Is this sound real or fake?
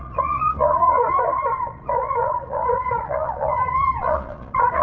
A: fake